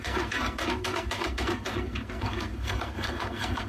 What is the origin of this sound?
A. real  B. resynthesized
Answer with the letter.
B